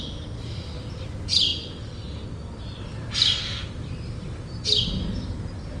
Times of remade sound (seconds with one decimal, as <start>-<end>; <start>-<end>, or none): none